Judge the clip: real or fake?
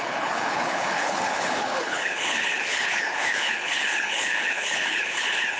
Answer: fake